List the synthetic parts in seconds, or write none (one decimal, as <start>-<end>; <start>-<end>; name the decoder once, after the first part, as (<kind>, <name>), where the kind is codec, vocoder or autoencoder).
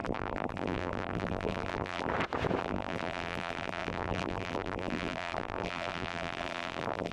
0.0-2.1 (vocoder, BigVGAN v2); 2.6-7.1